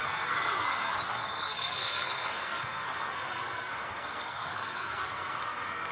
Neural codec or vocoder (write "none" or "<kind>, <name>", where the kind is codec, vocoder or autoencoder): codec, SNAC